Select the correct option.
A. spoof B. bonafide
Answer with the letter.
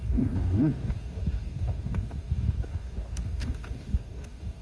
A